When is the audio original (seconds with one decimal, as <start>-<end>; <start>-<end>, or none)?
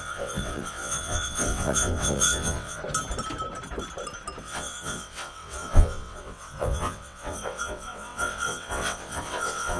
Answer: 2.8-4.4